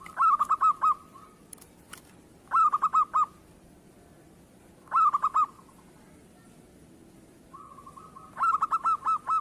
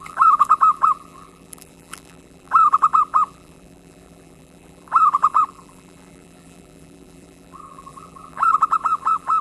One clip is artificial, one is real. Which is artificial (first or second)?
second